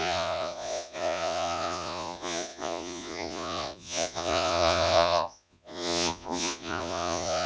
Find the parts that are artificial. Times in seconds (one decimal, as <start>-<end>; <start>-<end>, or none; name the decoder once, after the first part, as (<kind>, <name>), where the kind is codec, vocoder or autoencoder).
0.0-7.5 (vocoder, Vocos)